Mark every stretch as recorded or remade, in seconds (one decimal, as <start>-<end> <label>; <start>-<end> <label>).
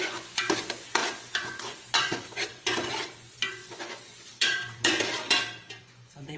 0.0-5.0 remade; 5.0-5.8 recorded; 5.8-6.4 remade